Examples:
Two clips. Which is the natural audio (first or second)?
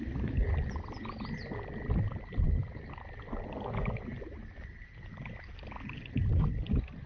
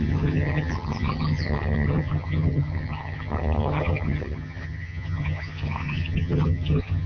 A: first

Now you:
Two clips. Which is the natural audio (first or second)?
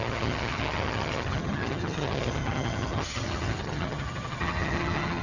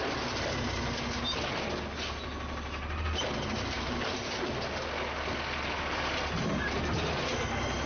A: second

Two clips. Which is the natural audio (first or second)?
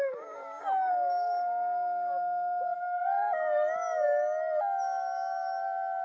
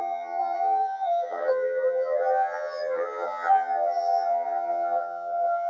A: first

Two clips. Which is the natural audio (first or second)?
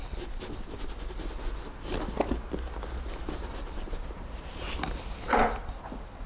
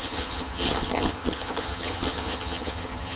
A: first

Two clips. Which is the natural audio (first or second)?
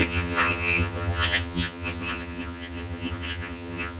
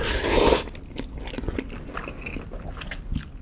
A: second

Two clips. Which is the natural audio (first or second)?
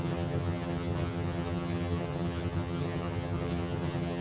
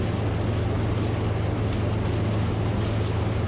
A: second